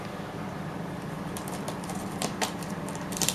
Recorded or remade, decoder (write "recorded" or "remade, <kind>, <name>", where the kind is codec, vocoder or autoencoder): remade, vocoder, BigVGAN v2